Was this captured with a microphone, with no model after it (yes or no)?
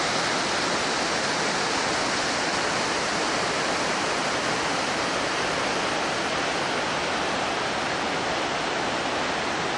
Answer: yes